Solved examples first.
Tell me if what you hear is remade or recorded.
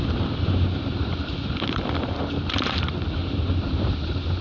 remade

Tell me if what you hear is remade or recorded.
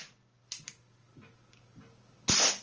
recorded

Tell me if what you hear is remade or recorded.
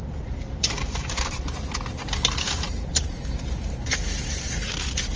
remade